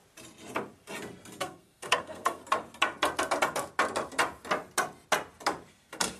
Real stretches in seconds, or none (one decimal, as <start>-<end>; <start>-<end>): 0.0-1.4; 2.4-5.7